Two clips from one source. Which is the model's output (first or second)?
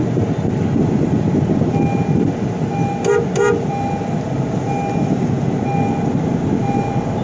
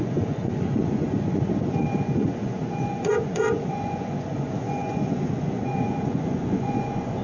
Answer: second